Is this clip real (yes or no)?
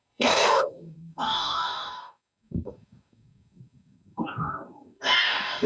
no